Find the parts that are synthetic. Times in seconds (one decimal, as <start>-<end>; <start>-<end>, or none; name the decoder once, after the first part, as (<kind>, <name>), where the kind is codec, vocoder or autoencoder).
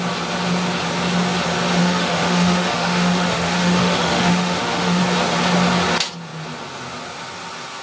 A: 1.8-5.0 (autoencoder, DAC-VAE)